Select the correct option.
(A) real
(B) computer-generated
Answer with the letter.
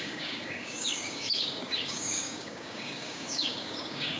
B